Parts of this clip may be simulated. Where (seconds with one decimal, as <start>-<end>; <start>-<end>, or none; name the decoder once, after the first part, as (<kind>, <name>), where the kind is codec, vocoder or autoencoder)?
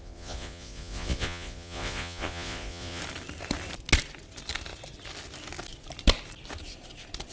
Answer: 0.0-3.0 (vocoder, Vocos)